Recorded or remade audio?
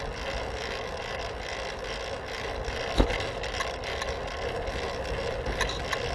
recorded